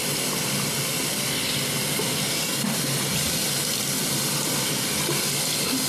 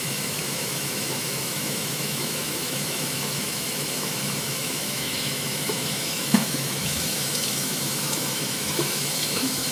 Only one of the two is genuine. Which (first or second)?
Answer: first